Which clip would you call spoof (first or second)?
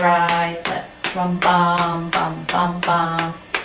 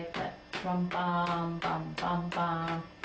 first